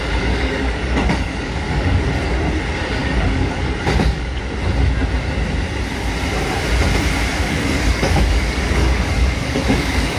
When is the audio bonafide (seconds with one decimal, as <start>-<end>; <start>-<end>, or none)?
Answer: 2.0-3.0; 4.4-7.3